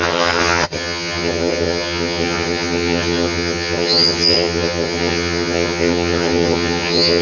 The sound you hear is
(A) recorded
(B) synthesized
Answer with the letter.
B